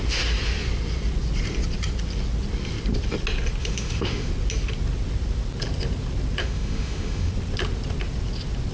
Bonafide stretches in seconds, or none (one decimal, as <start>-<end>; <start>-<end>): 0.0-3.6; 4.3-6.4; 7.3-8.7